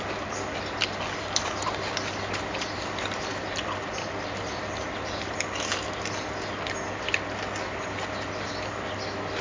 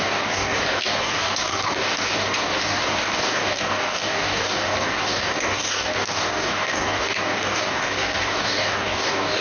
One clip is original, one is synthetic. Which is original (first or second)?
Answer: first